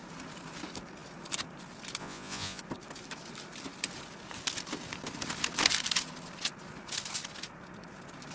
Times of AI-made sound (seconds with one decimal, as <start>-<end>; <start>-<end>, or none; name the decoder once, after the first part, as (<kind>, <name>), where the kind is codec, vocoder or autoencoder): 2.0-2.6 (vocoder, Vocos)